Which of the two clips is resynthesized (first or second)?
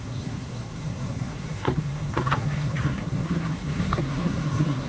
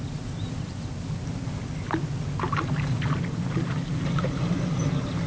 first